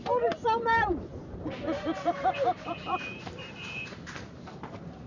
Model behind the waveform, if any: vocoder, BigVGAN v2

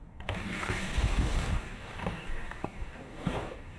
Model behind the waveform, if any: codec, DAC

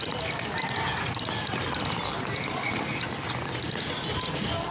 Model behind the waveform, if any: none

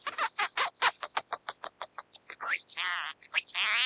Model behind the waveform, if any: none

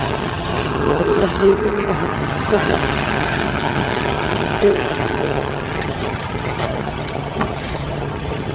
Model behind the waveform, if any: vocoder, HiFi-GAN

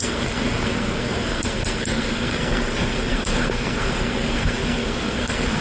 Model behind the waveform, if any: codec, SNAC